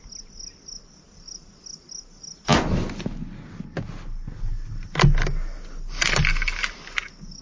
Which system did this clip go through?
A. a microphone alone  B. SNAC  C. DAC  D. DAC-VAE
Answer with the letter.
A